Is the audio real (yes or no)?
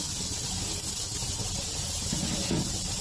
yes